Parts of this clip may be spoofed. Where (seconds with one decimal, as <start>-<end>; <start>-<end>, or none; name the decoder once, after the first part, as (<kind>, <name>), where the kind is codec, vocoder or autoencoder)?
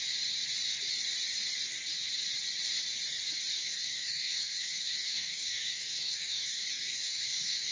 3.5-7.7 (codec, DAC)